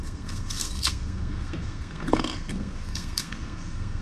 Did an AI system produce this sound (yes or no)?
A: yes